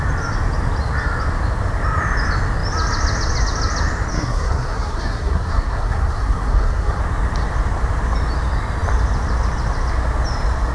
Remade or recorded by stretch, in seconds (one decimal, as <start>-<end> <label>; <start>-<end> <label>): 0.0-4.1 recorded; 4.1-7.0 remade; 7.0-10.7 recorded